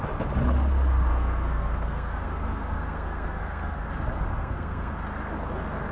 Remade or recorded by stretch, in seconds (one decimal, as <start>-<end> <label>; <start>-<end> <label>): 0.0-1.1 recorded; 1.1-3.9 remade; 3.9-4.3 recorded; 4.3-4.9 remade; 4.9-5.9 recorded